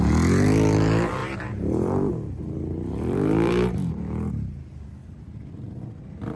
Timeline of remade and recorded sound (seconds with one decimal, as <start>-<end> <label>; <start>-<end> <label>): 0.0-1.2 recorded; 1.2-4.5 remade; 4.5-5.0 recorded; 5.0-5.8 remade; 5.8-6.4 recorded